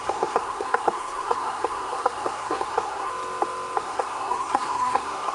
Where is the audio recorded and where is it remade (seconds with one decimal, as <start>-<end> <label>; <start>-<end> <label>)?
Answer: 0.0-3.1 remade; 3.1-3.8 recorded; 3.8-5.3 remade